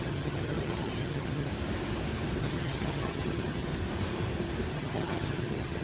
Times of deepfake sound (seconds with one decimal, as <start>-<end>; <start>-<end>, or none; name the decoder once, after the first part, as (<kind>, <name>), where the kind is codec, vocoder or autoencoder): 0.0-1.5 (vocoder, HiFi-GAN); 2.4-3.7; 4.7-5.8